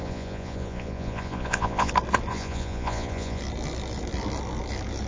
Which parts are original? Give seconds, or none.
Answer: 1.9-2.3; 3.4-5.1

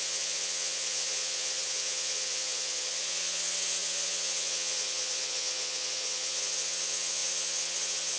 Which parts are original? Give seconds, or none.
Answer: none

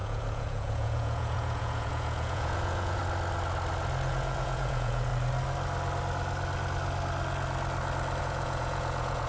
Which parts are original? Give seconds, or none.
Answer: 3.0-4.1; 5.1-8.2

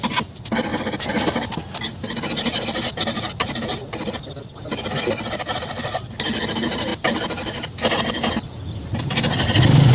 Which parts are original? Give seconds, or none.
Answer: 0.0-0.7; 1.2-9.9

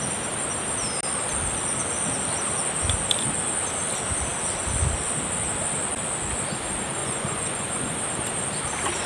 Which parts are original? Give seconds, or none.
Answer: 0.0-7.0; 8.0-9.1

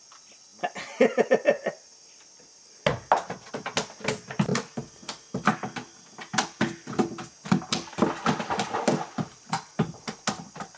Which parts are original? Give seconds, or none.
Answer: 0.0-10.8

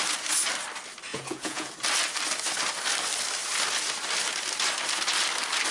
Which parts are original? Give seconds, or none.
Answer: 0.0-1.1; 1.7-5.7